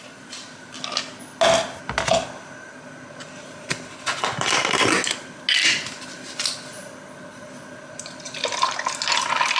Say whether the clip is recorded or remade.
recorded